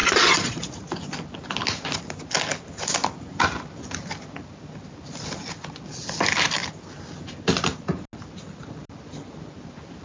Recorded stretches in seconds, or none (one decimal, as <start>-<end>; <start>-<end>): 0.8-10.0